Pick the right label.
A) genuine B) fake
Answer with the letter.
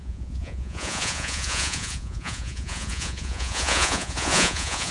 B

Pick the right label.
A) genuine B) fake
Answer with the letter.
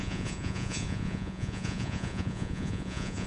B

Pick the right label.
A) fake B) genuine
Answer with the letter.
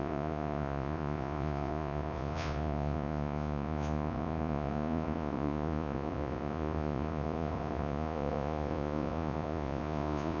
A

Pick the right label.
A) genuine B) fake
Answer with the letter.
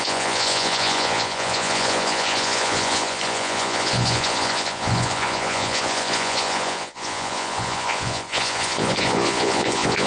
B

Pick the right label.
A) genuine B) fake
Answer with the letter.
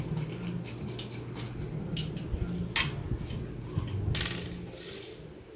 A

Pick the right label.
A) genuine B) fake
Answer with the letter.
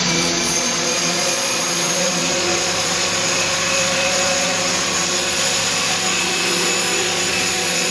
B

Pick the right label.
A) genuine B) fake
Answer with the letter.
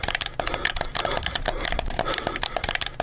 A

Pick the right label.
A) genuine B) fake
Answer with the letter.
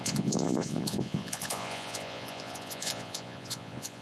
B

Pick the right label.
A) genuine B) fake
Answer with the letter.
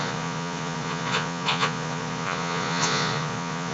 B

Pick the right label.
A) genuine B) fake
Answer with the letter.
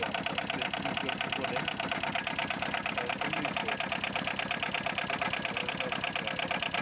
A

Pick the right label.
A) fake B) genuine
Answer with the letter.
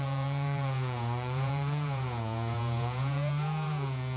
A